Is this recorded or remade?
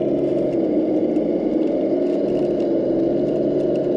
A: recorded